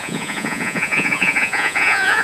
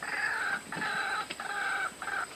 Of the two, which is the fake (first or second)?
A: first